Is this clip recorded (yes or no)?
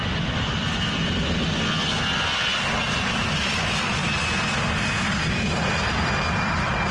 yes